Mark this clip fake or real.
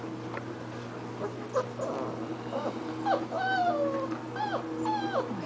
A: real